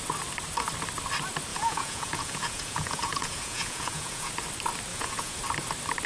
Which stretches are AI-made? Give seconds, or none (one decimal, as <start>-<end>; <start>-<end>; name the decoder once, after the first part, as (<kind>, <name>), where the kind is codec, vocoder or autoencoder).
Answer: 1.5-4.3 (vocoder, Vocos); 4.9-5.4